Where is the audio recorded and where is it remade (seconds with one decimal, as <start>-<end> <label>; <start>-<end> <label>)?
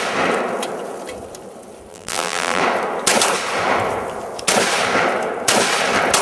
0.0-1.9 recorded; 1.9-2.6 remade; 2.6-6.2 recorded